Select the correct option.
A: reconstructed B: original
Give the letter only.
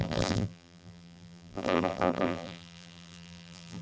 A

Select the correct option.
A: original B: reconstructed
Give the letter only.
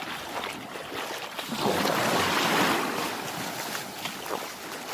A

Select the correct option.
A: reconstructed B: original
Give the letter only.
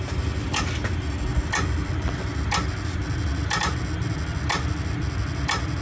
B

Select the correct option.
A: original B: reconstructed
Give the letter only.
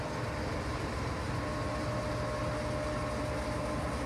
A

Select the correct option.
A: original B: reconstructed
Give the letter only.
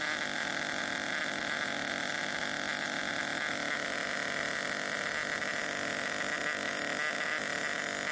A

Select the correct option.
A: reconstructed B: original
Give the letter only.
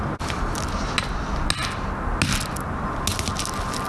B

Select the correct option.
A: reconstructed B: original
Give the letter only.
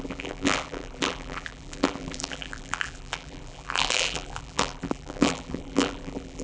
A